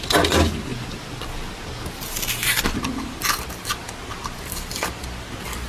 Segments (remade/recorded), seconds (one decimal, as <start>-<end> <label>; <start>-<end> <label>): 0.0-5.7 recorded